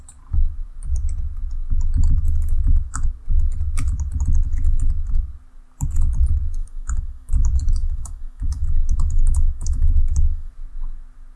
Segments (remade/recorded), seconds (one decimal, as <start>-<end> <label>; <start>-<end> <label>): 0.0-6.6 recorded; 6.6-7.3 remade; 7.3-7.8 recorded; 7.8-10.5 remade; 10.5-11.4 recorded